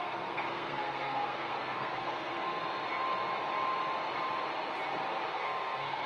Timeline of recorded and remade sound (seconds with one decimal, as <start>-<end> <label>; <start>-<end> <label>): 0.0-2.6 remade; 2.6-5.3 recorded; 5.3-6.1 remade